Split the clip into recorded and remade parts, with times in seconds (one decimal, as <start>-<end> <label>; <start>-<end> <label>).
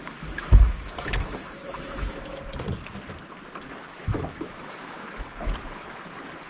0.0-2.4 remade; 2.4-3.9 recorded; 3.9-5.3 remade; 5.3-6.5 recorded